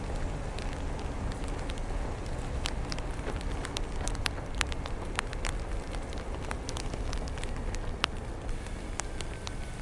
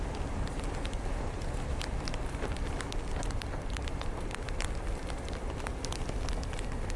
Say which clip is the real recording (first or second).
first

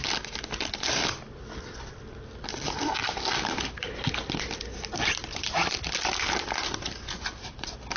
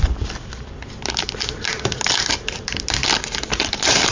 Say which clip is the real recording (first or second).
first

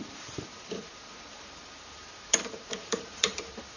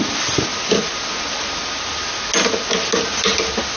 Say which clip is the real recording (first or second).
second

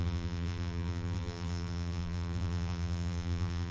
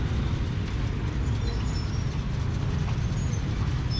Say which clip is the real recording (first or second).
second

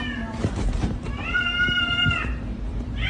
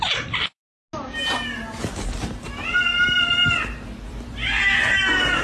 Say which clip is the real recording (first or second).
second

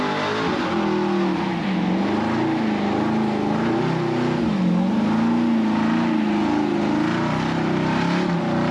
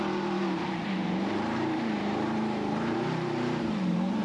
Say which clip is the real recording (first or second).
first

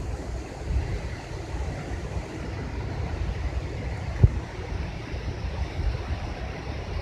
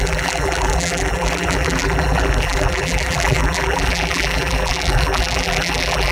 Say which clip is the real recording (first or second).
first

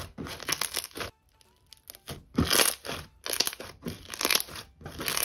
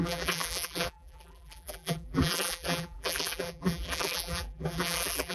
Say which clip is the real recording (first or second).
first